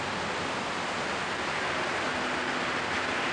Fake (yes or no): no